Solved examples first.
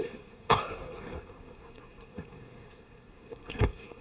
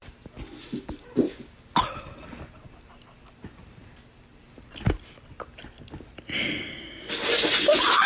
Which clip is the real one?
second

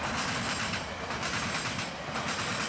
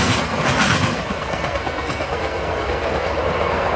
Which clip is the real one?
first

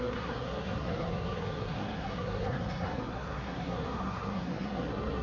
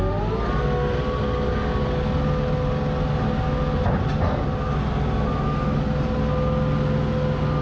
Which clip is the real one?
second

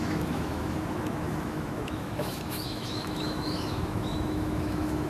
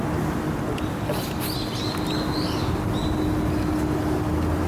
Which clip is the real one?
second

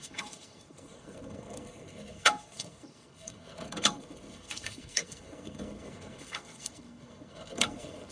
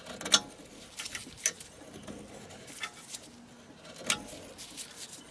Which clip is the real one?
second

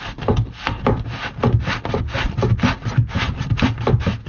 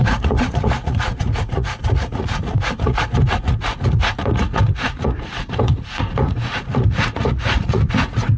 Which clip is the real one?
first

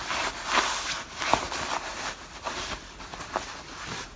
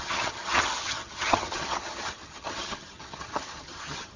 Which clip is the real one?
first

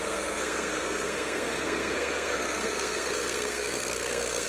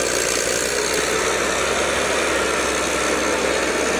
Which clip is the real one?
second